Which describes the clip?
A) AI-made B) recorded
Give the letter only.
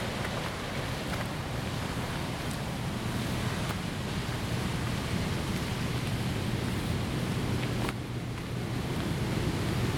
B